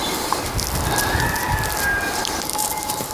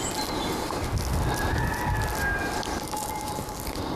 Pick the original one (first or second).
second